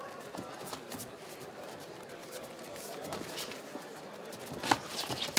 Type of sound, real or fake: real